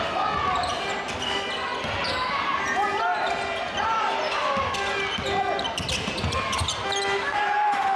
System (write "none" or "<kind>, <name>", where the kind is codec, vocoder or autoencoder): none